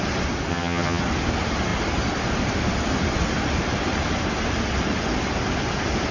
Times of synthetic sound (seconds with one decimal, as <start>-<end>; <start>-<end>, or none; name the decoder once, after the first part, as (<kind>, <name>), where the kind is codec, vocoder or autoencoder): 0.5-1.0 (vocoder, HiFi-GAN)